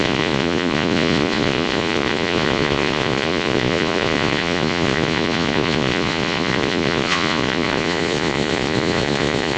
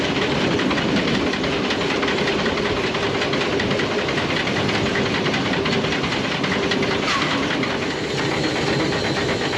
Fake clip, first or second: first